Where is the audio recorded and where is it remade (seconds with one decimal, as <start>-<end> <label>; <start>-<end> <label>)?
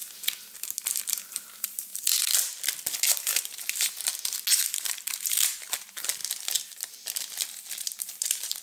0.0-1.0 recorded; 1.0-1.9 remade; 1.9-3.1 recorded; 3.1-4.1 remade; 4.1-4.6 recorded; 4.6-6.2 remade; 6.2-8.0 recorded; 8.0-8.6 remade